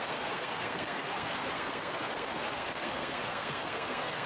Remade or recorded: remade